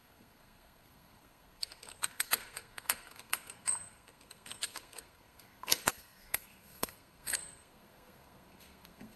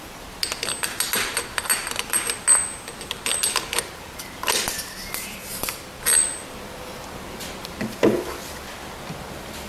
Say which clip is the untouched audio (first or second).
second